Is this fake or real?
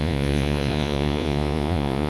fake